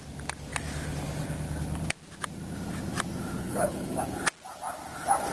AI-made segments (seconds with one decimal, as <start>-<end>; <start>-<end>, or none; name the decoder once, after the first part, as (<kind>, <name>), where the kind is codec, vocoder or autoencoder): 3.4-4.0 (codec, HILCodec)